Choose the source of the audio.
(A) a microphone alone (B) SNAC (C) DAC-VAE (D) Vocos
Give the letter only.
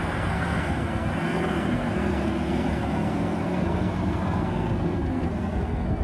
B